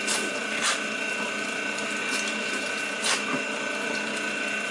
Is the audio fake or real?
real